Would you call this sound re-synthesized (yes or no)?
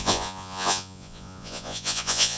yes